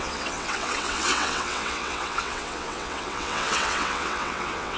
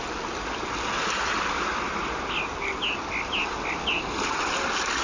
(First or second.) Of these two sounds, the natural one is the second